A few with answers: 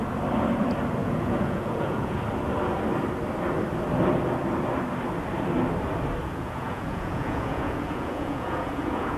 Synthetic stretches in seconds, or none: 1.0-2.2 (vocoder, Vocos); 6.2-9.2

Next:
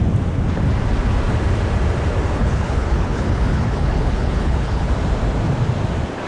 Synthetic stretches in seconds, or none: 2.4-4.9 (codec, HILCodec)